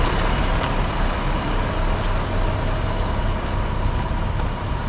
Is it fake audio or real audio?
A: real